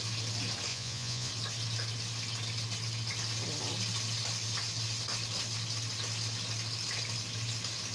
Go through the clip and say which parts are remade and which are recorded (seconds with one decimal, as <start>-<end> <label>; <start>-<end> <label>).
0.0-0.7 recorded; 0.7-1.3 remade; 1.3-7.9 recorded